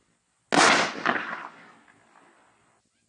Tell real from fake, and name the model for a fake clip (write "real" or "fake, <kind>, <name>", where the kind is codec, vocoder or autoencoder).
real